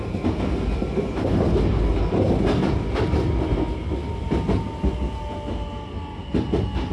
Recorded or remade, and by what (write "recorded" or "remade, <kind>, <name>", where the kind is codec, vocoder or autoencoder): recorded